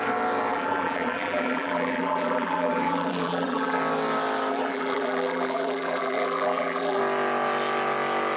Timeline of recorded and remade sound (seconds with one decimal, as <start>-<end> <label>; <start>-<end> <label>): 0.0-0.5 recorded; 0.5-3.8 remade; 3.8-4.5 recorded; 4.5-7.0 remade; 7.0-8.4 recorded